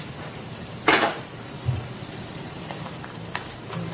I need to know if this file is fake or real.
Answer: fake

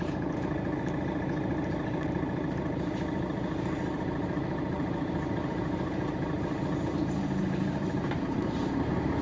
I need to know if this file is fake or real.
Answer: fake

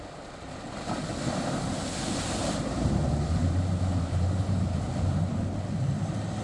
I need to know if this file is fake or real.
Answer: real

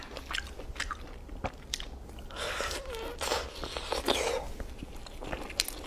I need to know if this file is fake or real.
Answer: real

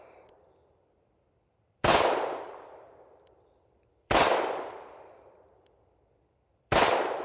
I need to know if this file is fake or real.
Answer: fake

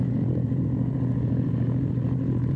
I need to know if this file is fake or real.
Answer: fake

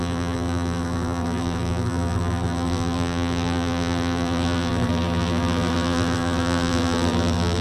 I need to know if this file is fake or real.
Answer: fake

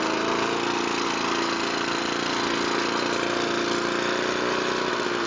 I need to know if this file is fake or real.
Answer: real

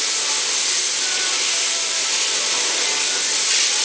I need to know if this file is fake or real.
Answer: real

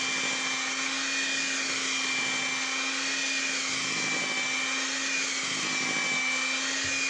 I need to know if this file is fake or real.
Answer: real